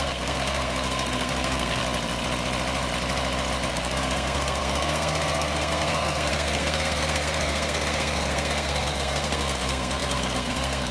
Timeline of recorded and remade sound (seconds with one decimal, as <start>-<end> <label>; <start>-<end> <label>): 0.0-1.8 remade; 1.8-3.7 recorded; 3.7-10.9 remade